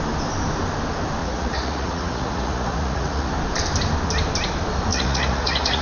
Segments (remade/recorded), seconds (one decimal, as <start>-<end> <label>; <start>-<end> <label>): 0.0-1.2 recorded; 1.2-3.3 remade; 3.3-4.9 recorded; 4.9-5.8 remade